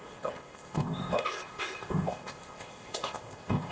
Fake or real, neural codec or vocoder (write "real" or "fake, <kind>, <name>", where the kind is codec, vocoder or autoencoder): fake, codec, ZipCodec